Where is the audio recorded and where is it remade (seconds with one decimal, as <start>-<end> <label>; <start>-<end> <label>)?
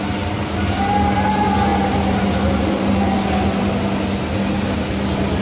0.0-5.4 recorded